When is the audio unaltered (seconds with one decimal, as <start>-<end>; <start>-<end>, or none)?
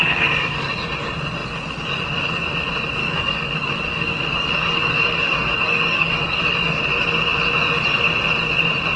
0.7-3.0; 6.8-9.0